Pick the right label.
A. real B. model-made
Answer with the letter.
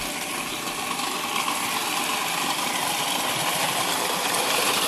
A